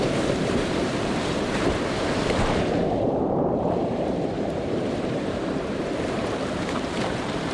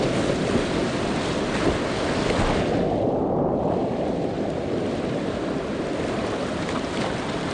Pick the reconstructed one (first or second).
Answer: first